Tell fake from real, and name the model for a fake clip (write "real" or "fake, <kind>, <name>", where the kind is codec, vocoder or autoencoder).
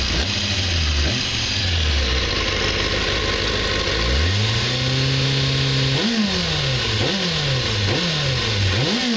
real